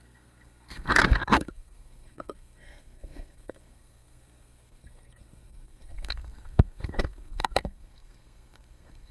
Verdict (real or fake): fake